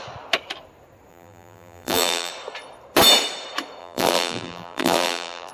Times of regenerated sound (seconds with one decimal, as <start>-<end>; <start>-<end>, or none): 1.1-2.3; 3.8-5.5